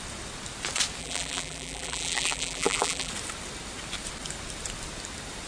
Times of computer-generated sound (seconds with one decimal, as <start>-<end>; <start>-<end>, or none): 1.0-3.1